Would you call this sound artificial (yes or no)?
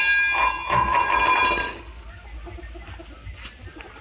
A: no